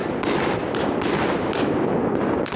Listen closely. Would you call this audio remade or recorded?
recorded